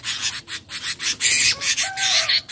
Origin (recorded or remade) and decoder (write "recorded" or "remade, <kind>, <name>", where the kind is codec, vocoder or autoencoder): recorded